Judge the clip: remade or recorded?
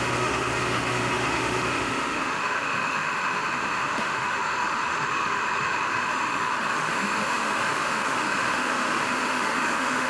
remade